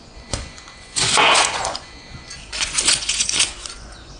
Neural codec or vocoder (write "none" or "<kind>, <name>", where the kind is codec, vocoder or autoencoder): vocoder, Vocos